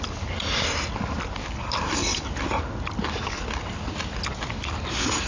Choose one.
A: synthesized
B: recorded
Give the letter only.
B